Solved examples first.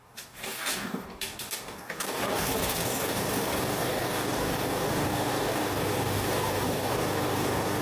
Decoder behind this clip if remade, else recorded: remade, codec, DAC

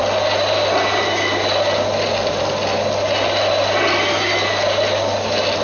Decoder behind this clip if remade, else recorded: recorded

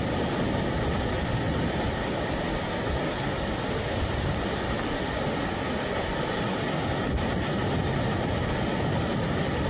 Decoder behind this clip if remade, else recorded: recorded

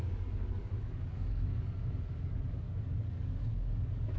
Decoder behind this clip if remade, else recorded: remade, codec, DAC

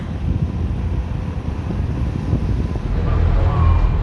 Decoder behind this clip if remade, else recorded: recorded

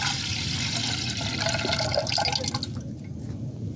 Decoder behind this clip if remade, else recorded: recorded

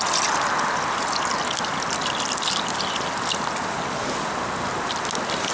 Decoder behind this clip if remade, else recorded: recorded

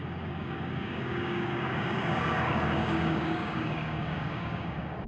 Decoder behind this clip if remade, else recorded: remade, codec, DAC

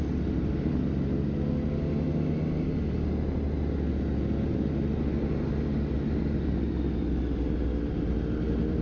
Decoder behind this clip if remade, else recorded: recorded